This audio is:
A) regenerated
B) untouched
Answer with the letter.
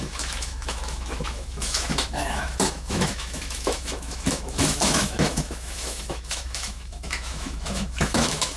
A